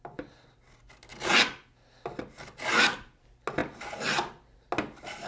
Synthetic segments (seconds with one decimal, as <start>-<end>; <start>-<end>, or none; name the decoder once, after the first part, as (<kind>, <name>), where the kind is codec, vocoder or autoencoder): none